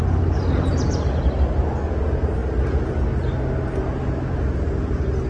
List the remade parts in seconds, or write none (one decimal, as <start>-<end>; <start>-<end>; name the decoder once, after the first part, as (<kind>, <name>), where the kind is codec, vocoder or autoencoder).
none